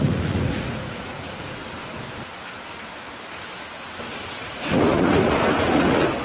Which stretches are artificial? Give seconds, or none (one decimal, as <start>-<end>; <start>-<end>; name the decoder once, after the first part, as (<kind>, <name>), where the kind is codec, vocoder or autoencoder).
0.0-1.6 (vocoder, Vocos); 4.4-6.2